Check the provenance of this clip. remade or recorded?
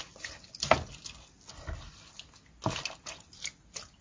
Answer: recorded